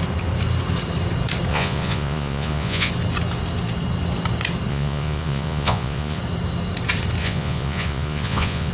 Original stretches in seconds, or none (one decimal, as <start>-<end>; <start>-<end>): 0.0-1.5; 2.9-4.7; 6.2-7.2